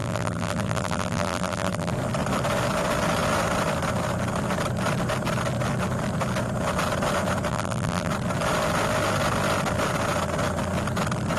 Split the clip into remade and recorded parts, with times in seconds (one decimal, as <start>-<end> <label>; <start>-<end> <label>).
0.0-1.9 remade; 1.9-7.5 recorded; 7.5-8.1 remade; 8.1-11.4 recorded